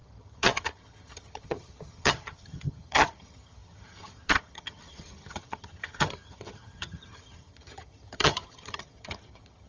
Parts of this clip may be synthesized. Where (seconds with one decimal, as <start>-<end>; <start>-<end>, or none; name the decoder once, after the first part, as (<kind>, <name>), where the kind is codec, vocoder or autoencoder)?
0.0-9.7 (vocoder, HiFi-GAN)